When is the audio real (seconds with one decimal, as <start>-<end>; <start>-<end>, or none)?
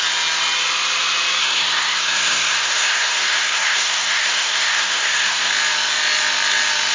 0.0-1.4; 5.5-6.9